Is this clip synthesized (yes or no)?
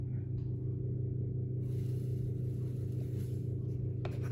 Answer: no